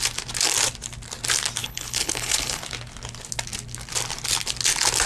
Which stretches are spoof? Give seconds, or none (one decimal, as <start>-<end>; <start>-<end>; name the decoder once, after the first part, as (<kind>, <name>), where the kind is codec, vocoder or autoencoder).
1.6-2.6 (codec, HILCodec)